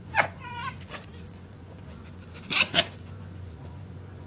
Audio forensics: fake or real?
fake